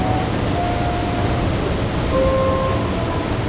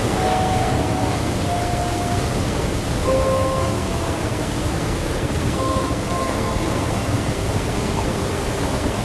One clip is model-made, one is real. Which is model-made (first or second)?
second